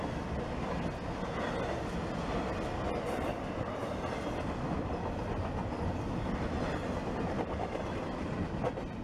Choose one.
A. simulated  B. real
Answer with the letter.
B